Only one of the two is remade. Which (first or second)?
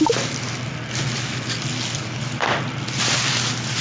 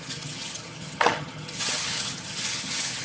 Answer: second